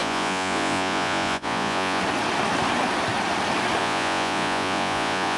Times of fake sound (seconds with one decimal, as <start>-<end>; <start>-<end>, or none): 0.0-2.0; 3.8-5.4